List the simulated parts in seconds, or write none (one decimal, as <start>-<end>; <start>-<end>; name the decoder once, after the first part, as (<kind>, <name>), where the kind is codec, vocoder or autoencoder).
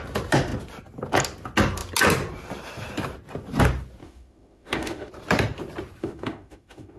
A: 4.0-5.1 (autoencoder, DAC-VAE); 6.0-7.0